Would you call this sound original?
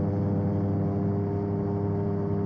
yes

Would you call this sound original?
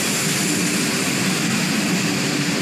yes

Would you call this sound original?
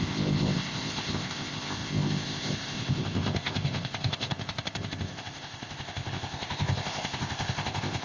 no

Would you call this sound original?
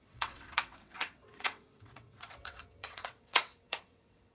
no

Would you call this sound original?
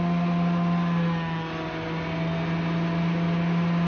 yes